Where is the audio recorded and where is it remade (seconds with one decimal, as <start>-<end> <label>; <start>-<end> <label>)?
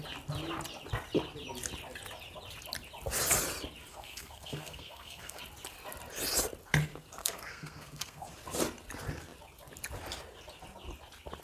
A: 0.0-3.9 recorded; 3.9-5.4 remade; 5.4-7.2 recorded; 7.2-8.3 remade; 8.3-11.4 recorded